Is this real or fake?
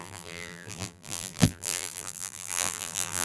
fake